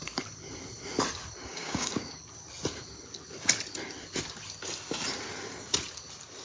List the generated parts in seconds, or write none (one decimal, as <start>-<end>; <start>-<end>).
1.4-1.9